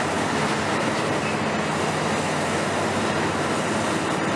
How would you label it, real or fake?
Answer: real